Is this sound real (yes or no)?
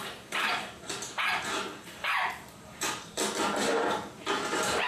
no